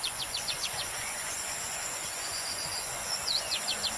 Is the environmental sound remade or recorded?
remade